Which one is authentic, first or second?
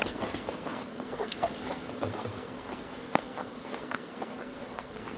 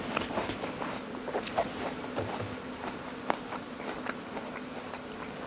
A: second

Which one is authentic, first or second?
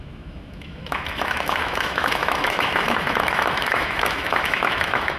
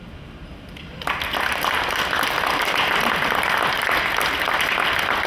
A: second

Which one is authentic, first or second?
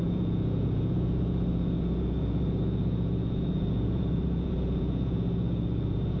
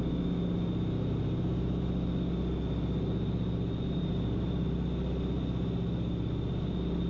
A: second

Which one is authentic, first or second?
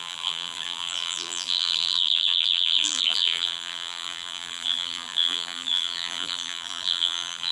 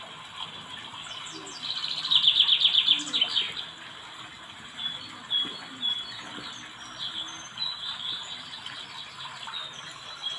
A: second